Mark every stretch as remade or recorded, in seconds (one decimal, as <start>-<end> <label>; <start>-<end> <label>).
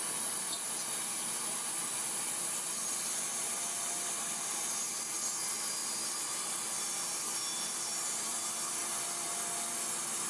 0.0-2.0 recorded; 2.0-4.3 remade; 4.3-5.8 recorded; 5.8-8.4 remade; 8.4-10.3 recorded